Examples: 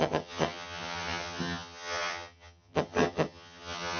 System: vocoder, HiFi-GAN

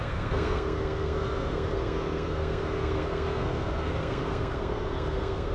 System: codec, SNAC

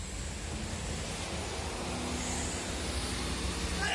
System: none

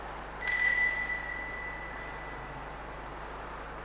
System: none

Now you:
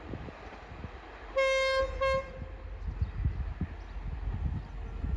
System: none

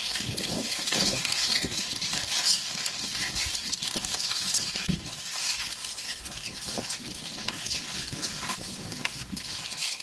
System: codec, DAC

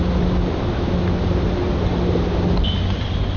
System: none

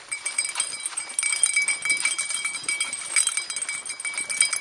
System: none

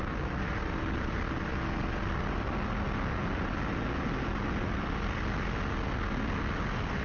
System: none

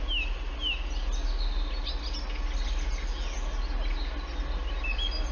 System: none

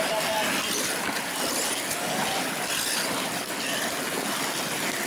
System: none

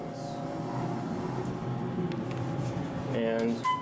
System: none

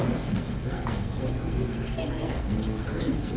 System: codec, SNAC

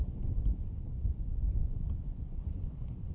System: vocoder, Vocos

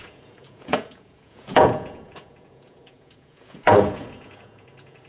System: vocoder, Vocos